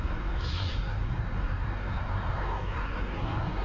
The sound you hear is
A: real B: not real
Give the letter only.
B